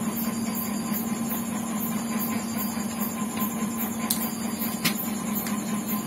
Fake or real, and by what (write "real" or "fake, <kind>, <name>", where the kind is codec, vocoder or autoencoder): real